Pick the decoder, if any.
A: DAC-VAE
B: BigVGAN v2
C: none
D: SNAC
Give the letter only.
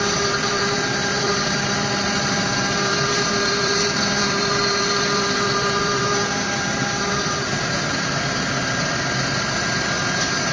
B